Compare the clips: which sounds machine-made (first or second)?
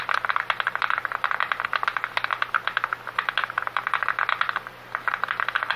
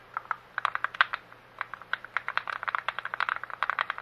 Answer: second